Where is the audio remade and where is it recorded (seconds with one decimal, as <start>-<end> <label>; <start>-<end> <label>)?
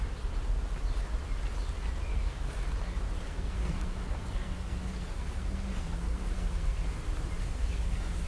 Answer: 0.0-2.1 recorded; 2.1-2.7 remade; 2.7-3.2 recorded; 3.2-6.9 remade; 6.9-7.4 recorded; 7.4-8.3 remade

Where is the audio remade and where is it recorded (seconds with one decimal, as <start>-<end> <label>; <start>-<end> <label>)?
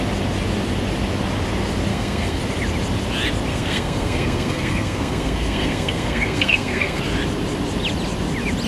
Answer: 0.0-1.9 recorded; 1.9-2.4 remade; 2.4-3.5 recorded; 3.5-7.0 remade; 7.0-8.7 recorded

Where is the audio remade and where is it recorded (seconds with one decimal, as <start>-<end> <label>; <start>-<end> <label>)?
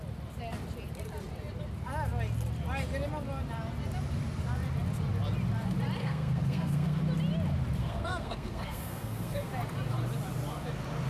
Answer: 0.0-6.0 recorded; 6.0-7.0 remade; 7.0-7.8 recorded; 7.8-9.5 remade; 9.5-11.1 recorded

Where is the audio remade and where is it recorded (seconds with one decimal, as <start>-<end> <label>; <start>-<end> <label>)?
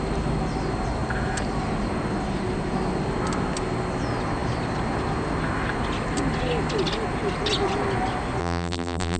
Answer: 0.0-8.4 recorded; 8.4-9.2 remade